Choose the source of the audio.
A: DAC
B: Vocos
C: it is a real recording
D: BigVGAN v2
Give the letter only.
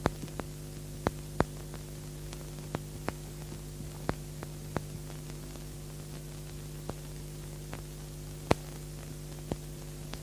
C